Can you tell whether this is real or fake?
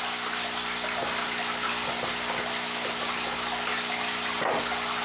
real